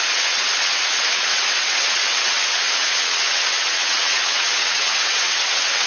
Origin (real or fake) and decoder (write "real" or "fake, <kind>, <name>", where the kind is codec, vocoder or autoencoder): fake, vocoder, WaveNeXt